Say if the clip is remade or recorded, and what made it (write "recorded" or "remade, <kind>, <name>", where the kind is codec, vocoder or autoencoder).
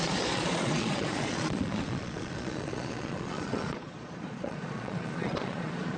remade, vocoder, Vocos